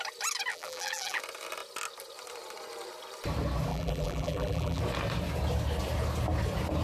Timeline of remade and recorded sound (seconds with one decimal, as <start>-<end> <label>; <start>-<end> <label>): 0.0-0.5 recorded; 0.5-1.2 remade; 1.2-3.7 recorded; 3.7-4.8 remade; 4.8-6.8 recorded